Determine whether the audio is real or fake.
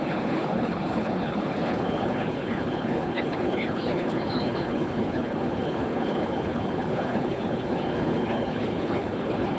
fake